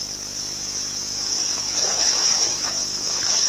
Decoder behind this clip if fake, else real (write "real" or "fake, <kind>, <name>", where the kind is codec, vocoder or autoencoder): fake, autoencoder, DAC-VAE